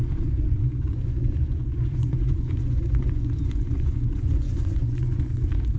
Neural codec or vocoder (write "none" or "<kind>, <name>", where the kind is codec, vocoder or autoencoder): vocoder, Vocos